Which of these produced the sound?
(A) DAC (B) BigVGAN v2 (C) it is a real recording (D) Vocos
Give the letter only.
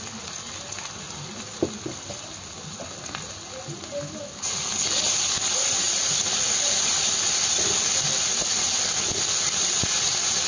C